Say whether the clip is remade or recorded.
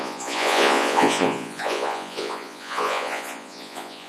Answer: remade